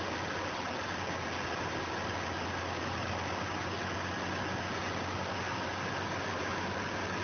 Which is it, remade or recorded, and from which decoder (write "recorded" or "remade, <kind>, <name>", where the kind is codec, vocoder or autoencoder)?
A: recorded